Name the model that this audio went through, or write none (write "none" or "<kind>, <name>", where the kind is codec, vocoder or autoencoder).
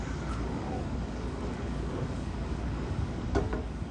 codec, DAC